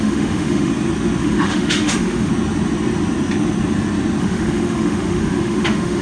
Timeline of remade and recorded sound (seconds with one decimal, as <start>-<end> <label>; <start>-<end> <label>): 0.0-0.7 remade; 0.7-1.2 recorded; 1.2-2.3 remade; 2.3-4.2 recorded; 4.2-6.0 remade